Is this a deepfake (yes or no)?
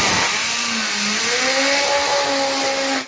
no